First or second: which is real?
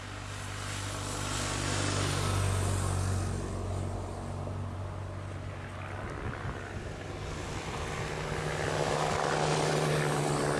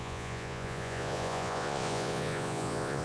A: first